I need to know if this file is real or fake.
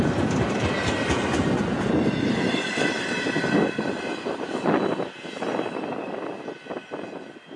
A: real